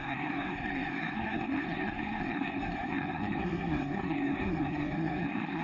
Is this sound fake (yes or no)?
yes